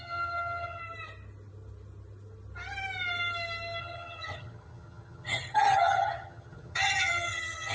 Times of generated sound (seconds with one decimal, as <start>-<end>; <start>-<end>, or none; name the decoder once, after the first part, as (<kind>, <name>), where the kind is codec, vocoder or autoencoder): 0.0-0.8 (vocoder, HiFi-GAN); 3.8-7.7